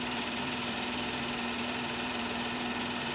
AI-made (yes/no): yes